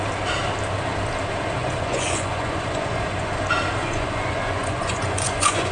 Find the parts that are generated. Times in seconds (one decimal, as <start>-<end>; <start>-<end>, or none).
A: 1.6-3.3; 3.8-5.7